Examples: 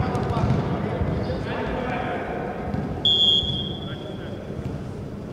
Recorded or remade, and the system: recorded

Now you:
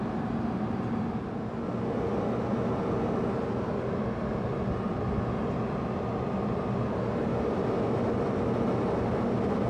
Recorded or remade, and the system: recorded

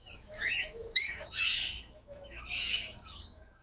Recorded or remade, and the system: remade, autoencoder, DAC-VAE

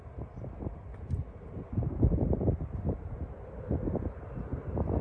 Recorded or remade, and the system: recorded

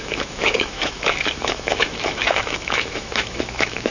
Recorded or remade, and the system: remade, autoencoder, DAC-VAE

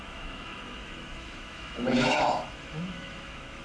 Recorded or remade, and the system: remade, autoencoder, DAC-VAE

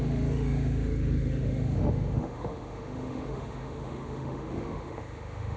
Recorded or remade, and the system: remade, autoencoder, DAC-VAE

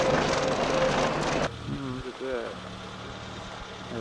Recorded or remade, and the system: recorded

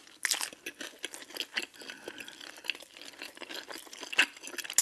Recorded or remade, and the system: recorded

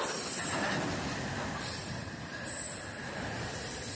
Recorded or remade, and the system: recorded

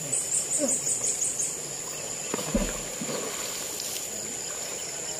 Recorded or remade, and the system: recorded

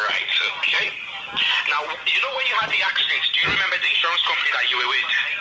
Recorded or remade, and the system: recorded